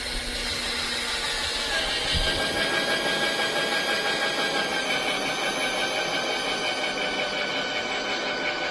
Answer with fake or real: real